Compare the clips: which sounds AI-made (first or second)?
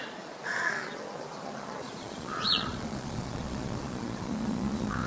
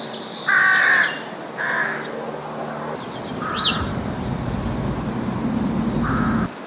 first